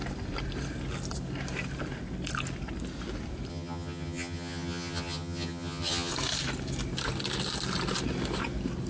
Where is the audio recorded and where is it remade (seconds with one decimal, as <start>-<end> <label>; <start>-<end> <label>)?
0.0-3.5 recorded; 3.5-6.1 remade; 6.1-8.9 recorded